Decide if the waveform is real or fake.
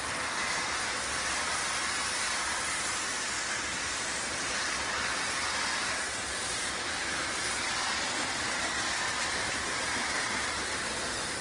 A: real